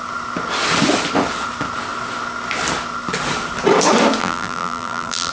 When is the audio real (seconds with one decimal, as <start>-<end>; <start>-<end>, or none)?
0.0-4.2